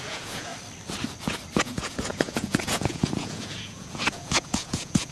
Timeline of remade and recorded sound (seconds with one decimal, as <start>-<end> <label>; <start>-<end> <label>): 0.0-0.5 remade; 0.5-1.6 recorded; 1.6-5.1 remade